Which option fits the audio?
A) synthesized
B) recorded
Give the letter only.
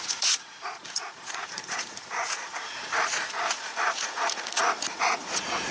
A